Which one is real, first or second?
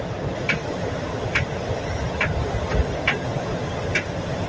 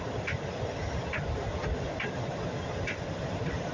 first